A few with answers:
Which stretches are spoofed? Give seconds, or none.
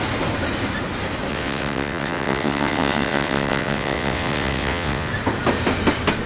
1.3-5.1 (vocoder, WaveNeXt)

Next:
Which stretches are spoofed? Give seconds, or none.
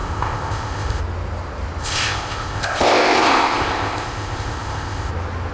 0.0-1.0 (codec, ZipCodec); 1.8-5.1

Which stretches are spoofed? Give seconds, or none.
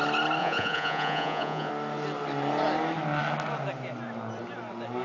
0.4-1.7 (vocoder, Vocos)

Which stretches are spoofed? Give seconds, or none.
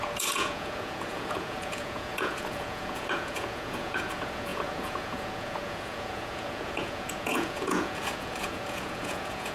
0.0-9.5 (vocoder, Vocos)